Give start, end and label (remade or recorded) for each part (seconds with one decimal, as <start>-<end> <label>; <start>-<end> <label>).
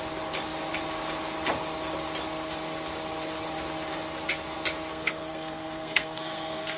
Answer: 0.0-4.9 recorded; 4.9-6.8 remade